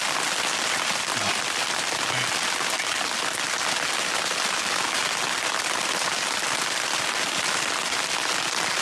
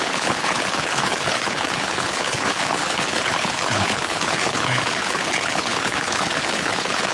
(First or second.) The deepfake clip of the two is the second